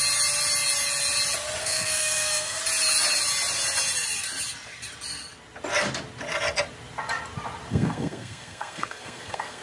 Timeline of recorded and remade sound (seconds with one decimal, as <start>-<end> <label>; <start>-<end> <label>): 0.0-1.6 recorded; 1.6-2.6 remade; 2.6-7.7 recorded; 7.7-9.6 remade